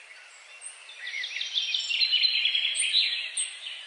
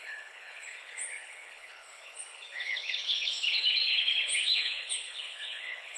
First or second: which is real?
first